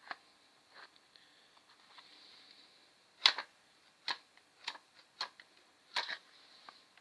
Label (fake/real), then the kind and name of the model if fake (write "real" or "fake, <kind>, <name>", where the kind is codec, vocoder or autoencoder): real